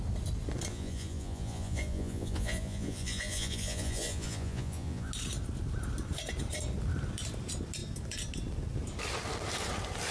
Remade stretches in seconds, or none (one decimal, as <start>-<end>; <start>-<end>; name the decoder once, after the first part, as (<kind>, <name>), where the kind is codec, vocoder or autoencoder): 0.7-5.1 (vocoder, Vocos)